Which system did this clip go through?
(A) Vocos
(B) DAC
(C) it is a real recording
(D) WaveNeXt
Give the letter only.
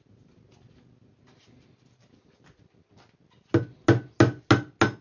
C